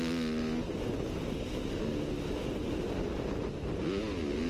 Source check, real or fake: real